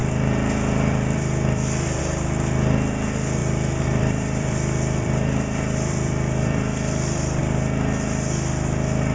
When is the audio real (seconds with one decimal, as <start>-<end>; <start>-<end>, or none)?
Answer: 2.0-3.4; 7.4-9.1